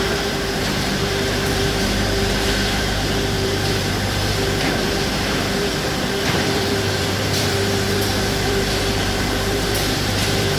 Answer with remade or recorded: remade